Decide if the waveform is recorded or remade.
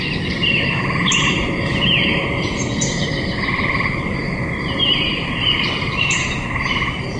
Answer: remade